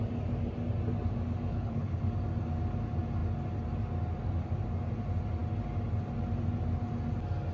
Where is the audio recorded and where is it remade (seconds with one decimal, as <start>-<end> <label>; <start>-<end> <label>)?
0.0-1.5 recorded; 1.5-2.0 remade; 2.0-7.5 recorded